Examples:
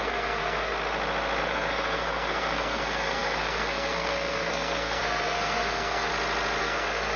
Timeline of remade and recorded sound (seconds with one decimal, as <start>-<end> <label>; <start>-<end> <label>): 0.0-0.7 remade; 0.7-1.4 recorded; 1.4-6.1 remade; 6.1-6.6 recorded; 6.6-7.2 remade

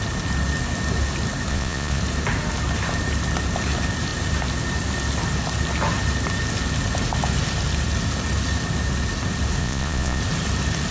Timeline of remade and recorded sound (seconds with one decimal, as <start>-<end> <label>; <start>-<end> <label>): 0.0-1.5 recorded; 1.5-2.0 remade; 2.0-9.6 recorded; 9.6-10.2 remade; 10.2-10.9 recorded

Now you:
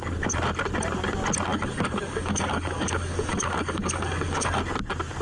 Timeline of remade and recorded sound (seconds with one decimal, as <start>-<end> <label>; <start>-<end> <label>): 0.0-1.5 recorded; 1.5-4.6 remade; 4.6-5.2 recorded

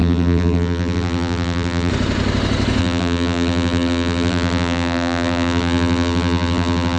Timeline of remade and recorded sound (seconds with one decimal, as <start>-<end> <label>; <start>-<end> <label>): 0.0-1.9 remade; 1.9-2.8 recorded; 2.8-7.0 remade

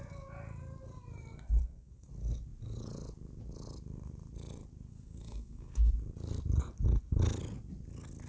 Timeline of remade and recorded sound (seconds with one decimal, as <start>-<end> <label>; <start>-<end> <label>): 0.0-1.6 recorded; 1.6-2.1 remade; 2.1-4.9 recorded; 4.9-5.9 remade; 5.9-8.3 recorded

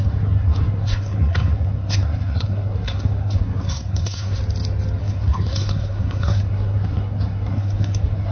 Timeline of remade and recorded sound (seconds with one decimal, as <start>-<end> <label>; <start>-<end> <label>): 0.0-4.4 remade; 4.4-5.0 recorded; 5.0-8.3 remade

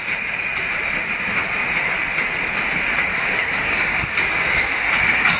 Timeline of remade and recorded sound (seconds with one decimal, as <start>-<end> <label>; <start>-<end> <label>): 0.0-3.1 recorded; 3.1-4.8 remade; 4.8-5.4 recorded